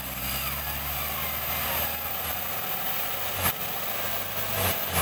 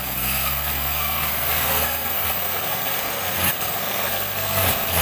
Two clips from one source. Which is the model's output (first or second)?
second